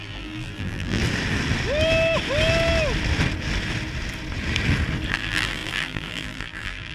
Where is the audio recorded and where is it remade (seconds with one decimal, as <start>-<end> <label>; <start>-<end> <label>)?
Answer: 0.0-1.0 remade; 1.0-5.1 recorded; 5.1-6.9 remade